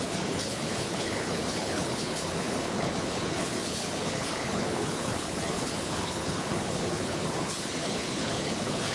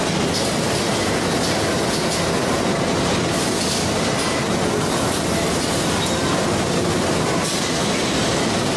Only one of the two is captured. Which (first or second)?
second